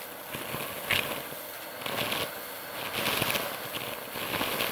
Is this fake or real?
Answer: real